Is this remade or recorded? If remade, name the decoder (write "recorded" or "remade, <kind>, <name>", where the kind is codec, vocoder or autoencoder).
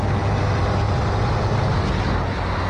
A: recorded